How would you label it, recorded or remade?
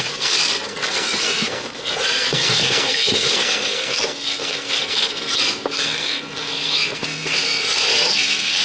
remade